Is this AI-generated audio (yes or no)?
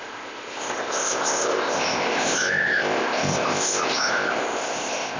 yes